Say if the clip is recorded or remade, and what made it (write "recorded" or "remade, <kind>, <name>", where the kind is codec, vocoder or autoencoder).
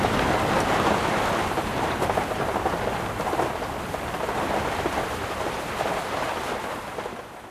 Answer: recorded